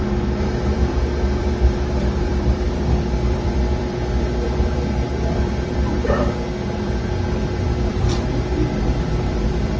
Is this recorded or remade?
remade